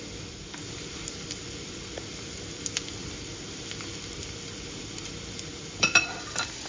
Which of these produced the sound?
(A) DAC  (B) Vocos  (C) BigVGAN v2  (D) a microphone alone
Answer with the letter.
D